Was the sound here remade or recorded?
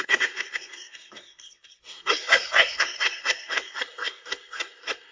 remade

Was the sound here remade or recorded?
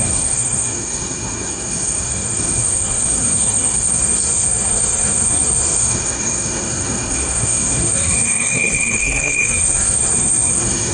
remade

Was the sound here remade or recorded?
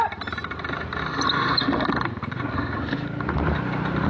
recorded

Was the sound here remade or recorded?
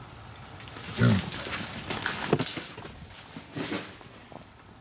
recorded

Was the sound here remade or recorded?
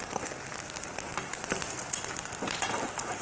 recorded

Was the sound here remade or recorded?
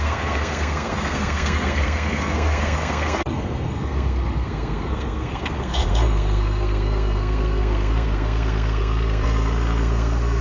remade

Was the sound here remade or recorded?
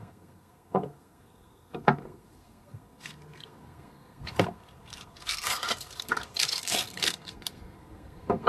remade